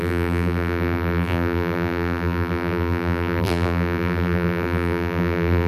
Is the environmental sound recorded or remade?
remade